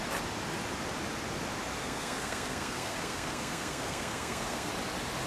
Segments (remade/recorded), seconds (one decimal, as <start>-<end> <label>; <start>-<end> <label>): 0.0-1.8 recorded; 1.8-4.7 remade; 4.7-5.3 recorded